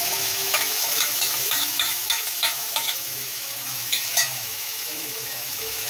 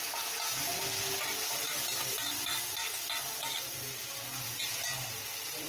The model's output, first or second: first